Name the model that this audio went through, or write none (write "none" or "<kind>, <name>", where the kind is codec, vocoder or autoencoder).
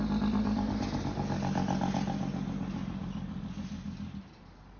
none